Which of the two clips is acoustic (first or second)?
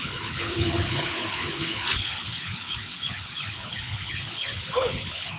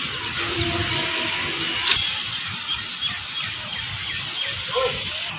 second